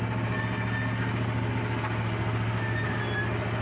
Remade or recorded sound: recorded